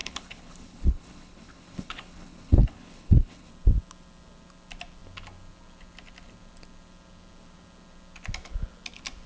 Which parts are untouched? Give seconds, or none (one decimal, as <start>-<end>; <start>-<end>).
3.5-9.3